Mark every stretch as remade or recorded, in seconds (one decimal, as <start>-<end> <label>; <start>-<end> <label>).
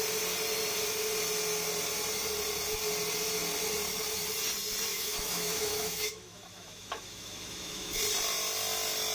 0.0-4.9 recorded; 4.9-8.0 remade; 8.0-9.1 recorded